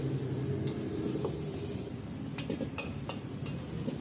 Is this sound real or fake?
real